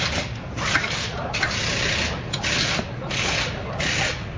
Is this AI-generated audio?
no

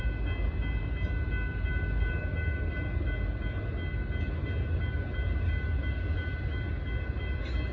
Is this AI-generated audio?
no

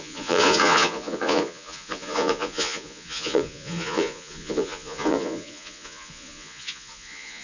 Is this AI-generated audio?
yes